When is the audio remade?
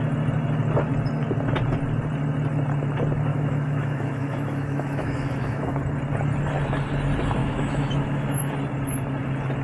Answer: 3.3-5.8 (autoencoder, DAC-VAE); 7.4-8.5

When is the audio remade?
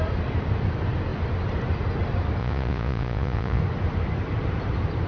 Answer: 2.4-3.6 (vocoder, Vocos)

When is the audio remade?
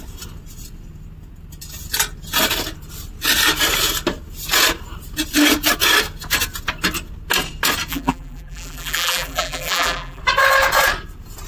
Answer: 7.9-10.2 (vocoder, BigVGAN v2)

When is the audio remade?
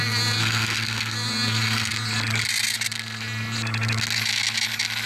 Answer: 0.0-1.9 (codec, SNAC)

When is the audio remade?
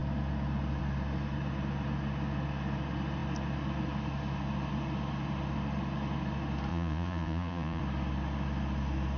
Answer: 6.7-7.8 (vocoder, Vocos)